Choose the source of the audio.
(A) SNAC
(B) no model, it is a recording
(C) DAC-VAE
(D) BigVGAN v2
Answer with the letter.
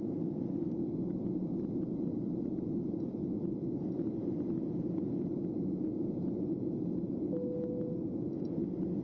B